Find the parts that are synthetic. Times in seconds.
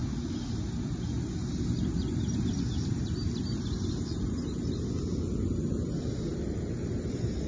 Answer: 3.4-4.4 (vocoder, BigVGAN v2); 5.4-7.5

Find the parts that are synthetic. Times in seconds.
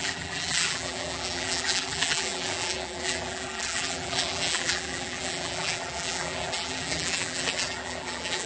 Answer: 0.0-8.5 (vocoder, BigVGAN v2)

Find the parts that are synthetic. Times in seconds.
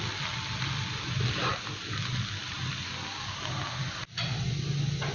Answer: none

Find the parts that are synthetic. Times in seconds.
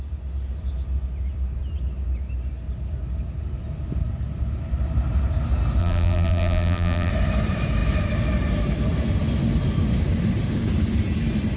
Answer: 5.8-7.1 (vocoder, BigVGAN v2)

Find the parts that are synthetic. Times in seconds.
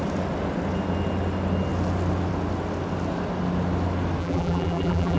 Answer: 4.2-5.2 (vocoder, BigVGAN v2)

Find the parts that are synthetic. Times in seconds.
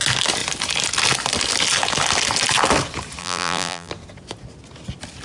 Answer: 3.2-3.9 (vocoder, BigVGAN v2)